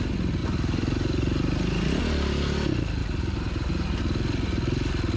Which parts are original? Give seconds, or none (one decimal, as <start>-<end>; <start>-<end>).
0.0-0.4; 2.0-3.0; 4.0-5.2